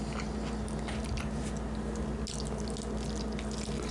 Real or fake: real